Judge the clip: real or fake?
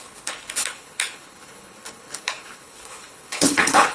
fake